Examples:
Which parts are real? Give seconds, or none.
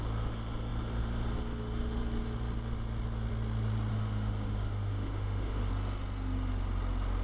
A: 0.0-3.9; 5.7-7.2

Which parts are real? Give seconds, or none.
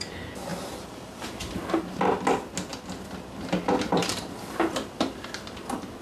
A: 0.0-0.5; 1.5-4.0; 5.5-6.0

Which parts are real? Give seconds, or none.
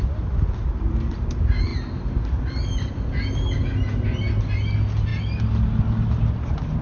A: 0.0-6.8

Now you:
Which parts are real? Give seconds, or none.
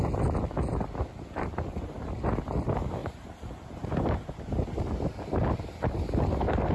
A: 0.0-3.0; 5.1-6.7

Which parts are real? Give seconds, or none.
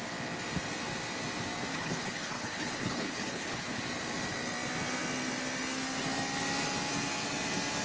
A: 0.0-1.7; 3.8-7.8